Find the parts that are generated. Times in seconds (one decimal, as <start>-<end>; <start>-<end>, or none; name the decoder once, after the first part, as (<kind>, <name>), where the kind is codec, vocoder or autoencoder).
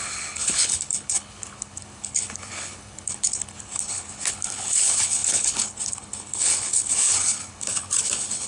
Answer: 0.0-8.5 (codec, HILCodec)